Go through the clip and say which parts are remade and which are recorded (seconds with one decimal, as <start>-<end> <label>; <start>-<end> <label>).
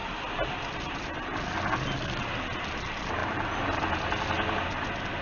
0.0-5.2 recorded